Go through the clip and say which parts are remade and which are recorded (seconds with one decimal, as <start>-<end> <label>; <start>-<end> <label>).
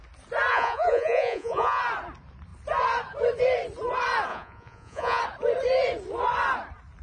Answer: 0.0-0.5 recorded; 0.5-1.8 remade; 1.8-4.3 recorded; 4.3-5.2 remade; 5.2-7.0 recorded